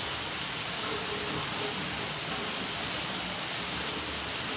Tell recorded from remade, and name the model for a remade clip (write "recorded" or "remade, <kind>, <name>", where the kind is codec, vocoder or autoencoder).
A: recorded